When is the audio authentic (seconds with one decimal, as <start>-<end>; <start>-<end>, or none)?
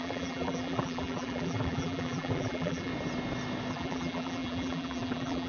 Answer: 2.9-3.7